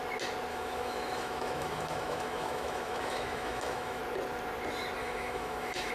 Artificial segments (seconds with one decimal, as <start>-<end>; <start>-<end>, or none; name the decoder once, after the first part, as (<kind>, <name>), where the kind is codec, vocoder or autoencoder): 0.5-4.0 (autoencoder, DAC-VAE); 5.0-5.9